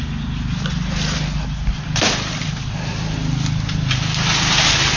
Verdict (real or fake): real